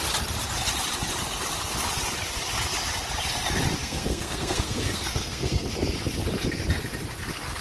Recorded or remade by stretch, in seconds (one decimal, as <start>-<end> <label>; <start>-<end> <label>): 0.0-3.8 recorded; 3.8-5.7 remade; 5.7-7.6 recorded